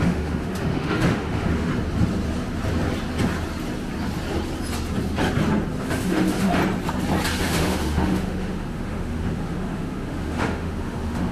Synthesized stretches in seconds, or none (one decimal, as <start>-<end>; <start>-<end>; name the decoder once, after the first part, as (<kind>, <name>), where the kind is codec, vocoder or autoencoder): 0.0-1.7 (autoencoder, DAC-VAE); 5.8-6.6; 7.4-11.3